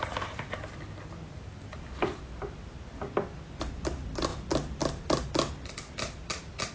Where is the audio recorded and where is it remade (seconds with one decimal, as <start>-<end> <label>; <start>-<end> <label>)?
0.0-6.7 recorded